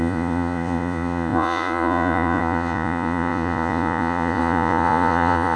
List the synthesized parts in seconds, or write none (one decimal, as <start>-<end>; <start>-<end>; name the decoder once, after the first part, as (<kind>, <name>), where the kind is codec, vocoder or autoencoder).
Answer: 0.0-5.6 (vocoder, Vocos)